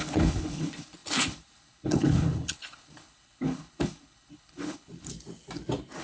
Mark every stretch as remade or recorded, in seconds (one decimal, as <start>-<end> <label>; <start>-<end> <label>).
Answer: 0.0-5.1 remade; 5.1-6.0 recorded